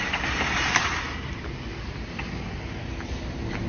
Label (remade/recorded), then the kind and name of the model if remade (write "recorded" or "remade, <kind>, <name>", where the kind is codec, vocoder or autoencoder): recorded